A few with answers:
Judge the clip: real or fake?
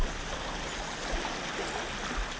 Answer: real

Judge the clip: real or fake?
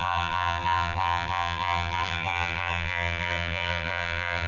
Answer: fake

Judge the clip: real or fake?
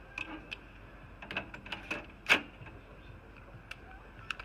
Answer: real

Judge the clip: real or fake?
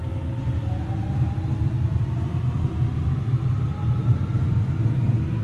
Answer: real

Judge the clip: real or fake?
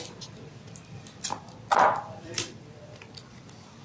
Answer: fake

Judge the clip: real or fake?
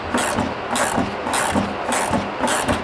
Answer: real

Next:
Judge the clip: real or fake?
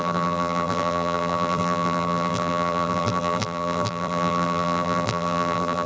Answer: fake